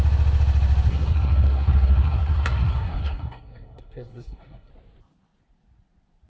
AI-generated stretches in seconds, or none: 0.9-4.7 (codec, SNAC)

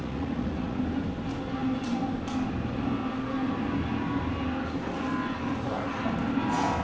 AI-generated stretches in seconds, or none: 0.0-0.8 (vocoder, Vocos)

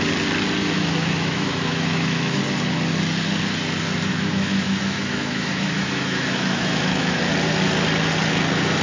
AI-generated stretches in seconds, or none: 0.6-2.4 (autoencoder, DAC-VAE); 4.1-7.2